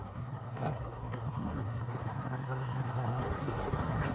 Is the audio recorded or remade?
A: remade